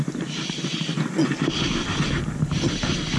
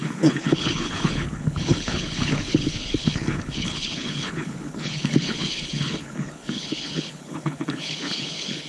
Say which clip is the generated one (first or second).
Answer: second